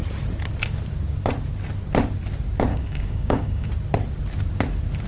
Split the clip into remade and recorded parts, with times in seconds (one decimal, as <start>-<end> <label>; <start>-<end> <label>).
0.0-2.7 recorded; 2.7-3.7 remade; 3.7-5.1 recorded